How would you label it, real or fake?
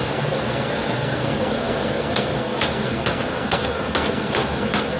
fake